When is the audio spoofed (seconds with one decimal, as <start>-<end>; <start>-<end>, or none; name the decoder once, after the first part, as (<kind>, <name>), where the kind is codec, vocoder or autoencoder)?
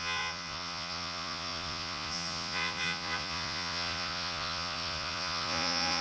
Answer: 0.0-6.0 (vocoder, Vocos)